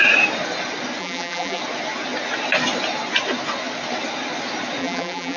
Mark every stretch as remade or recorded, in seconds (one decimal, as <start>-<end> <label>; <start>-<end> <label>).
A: 0.0-1.0 recorded; 1.0-1.6 remade; 1.6-4.8 recorded; 4.8-5.4 remade